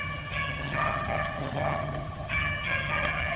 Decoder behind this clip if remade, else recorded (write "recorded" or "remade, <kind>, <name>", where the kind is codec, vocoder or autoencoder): remade, vocoder, HiFi-GAN